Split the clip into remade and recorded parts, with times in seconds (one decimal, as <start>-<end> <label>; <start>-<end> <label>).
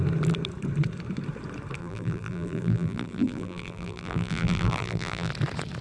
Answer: 0.0-1.8 recorded; 1.8-5.3 remade; 5.3-5.8 recorded